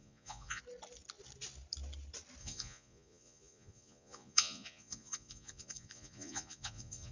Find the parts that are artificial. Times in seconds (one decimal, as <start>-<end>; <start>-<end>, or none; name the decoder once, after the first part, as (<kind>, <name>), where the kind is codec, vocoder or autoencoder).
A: 0.0-0.6 (vocoder, Vocos); 2.4-7.1